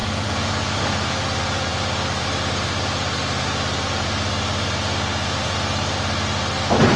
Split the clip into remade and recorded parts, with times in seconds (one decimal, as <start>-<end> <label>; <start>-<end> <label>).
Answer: 0.0-0.8 remade; 0.8-7.0 recorded